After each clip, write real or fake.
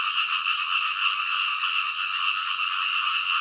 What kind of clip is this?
real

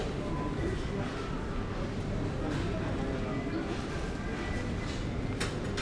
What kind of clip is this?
real